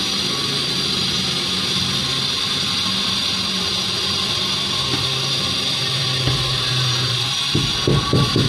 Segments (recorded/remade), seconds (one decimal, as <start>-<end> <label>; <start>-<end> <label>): 0.0-8.5 recorded

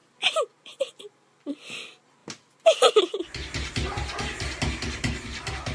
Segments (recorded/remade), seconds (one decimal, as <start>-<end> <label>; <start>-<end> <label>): 0.0-5.7 recorded